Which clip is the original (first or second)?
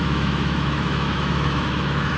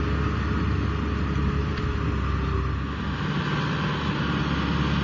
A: second